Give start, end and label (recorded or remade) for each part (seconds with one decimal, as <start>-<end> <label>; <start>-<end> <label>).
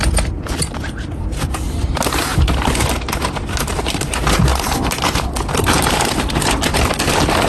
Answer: 0.0-7.5 recorded